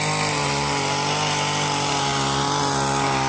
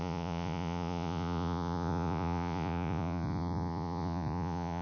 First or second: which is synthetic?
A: second